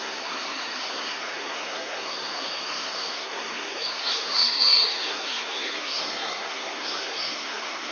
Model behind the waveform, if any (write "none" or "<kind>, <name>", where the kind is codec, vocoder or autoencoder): codec, SNAC